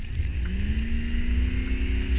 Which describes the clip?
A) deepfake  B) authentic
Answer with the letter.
B